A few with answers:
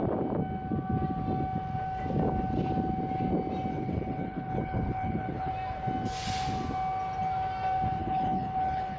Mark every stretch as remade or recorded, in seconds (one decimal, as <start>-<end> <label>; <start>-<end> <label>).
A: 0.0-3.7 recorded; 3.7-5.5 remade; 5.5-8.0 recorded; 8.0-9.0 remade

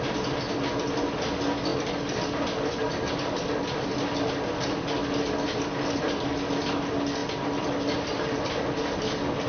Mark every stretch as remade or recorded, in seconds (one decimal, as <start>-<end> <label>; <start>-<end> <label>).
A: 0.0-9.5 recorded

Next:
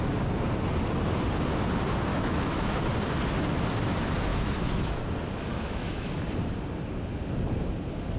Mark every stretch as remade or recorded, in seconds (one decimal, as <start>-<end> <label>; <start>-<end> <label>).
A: 0.0-2.1 recorded; 2.1-2.8 remade; 2.8-4.3 recorded; 4.3-5.0 remade; 5.0-5.5 recorded; 5.5-6.1 remade; 6.1-8.2 recorded